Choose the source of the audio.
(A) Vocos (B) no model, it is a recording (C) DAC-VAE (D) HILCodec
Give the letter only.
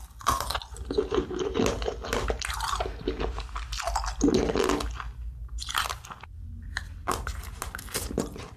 B